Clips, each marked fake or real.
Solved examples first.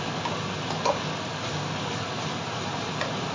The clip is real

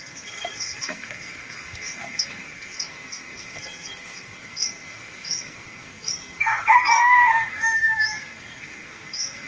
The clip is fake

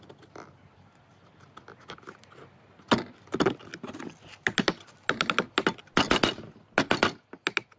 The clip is real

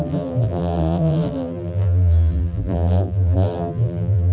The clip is fake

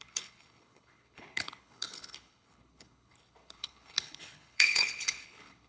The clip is fake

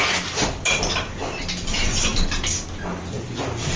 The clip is real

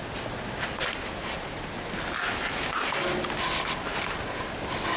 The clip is real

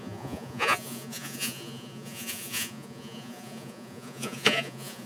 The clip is fake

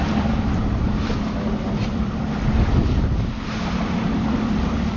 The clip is fake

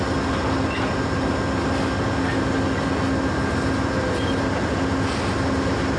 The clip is real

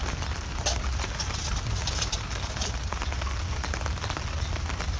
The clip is real